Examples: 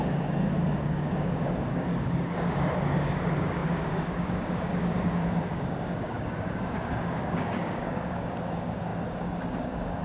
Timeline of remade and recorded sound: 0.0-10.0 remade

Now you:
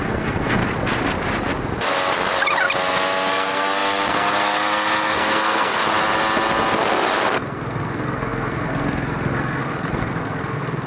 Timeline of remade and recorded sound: 0.0-0.6 remade; 0.6-3.3 recorded; 3.3-5.8 remade; 5.8-7.3 recorded; 7.3-10.9 remade

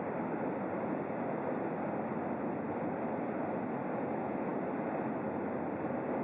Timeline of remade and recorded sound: 0.0-6.2 recorded